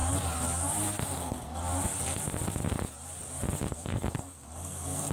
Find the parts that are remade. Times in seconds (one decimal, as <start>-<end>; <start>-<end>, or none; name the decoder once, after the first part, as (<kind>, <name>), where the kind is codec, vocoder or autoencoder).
1.0-1.6 (codec, SNAC); 3.7-5.1

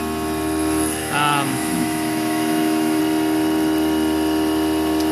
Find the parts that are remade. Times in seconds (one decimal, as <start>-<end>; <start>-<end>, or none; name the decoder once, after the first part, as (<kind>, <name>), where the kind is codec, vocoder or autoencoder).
1.0-3.0 (autoencoder, DAC-VAE)

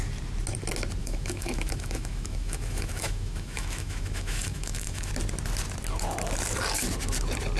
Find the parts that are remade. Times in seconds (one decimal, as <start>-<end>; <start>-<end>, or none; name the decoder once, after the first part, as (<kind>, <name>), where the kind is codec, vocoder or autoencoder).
1.0-5.1 (autoencoder, DAC-VAE)